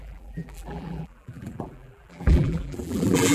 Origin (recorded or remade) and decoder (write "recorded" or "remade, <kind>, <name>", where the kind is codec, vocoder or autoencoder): remade, vocoder, BigVGAN v2